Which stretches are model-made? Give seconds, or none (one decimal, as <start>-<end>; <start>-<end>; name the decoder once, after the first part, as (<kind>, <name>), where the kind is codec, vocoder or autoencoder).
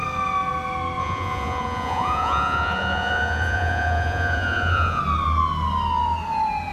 1.0-5.0 (vocoder, Vocos)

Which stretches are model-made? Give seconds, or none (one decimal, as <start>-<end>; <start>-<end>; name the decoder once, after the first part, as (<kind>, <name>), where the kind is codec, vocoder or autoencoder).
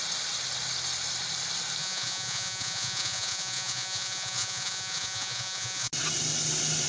1.8-5.9 (vocoder, Vocos)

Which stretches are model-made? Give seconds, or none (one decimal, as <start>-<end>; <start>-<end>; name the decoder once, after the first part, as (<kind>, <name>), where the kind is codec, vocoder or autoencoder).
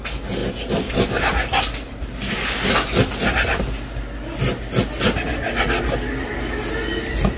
none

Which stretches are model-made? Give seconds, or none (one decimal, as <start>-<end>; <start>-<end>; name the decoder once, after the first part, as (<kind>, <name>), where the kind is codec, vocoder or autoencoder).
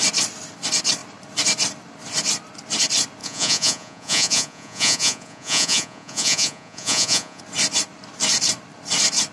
3.2-7.4 (vocoder, Vocos)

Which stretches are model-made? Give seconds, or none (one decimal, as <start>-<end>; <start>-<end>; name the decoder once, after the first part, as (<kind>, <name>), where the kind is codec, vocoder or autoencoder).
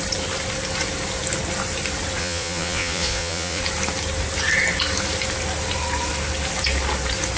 2.2-3.6 (vocoder, Vocos)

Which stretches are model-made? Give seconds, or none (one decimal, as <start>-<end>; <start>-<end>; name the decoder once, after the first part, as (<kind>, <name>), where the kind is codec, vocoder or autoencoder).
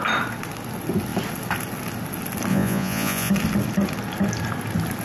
2.5-3.3 (vocoder, Vocos)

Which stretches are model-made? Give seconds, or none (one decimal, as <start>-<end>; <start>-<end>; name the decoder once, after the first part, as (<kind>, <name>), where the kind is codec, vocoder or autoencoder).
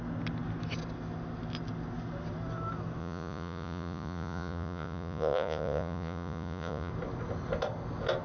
3.0-6.9 (vocoder, Vocos)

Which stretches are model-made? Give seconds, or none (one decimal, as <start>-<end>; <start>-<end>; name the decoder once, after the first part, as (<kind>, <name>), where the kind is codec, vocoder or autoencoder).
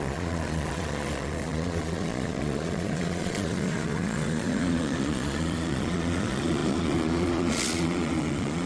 0.0-8.7 (vocoder, Vocos)